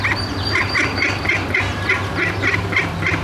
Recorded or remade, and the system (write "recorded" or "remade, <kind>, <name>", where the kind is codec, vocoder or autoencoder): recorded